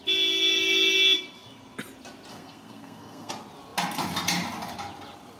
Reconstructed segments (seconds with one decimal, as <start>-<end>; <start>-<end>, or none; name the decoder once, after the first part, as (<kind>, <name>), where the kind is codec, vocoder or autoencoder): 2.3-3.3 (codec, SNAC)